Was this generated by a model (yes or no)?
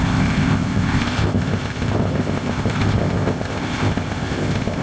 yes